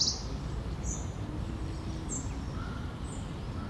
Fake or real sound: real